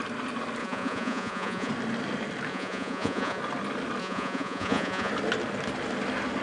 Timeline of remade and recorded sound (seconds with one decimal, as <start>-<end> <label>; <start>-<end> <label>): 0.0-0.6 recorded; 0.6-1.7 remade; 1.7-2.5 recorded; 2.5-3.4 remade; 3.4-4.0 recorded; 4.0-5.1 remade; 5.1-6.4 recorded